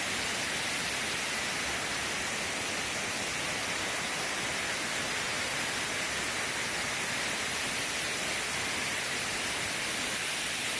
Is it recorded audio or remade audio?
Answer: recorded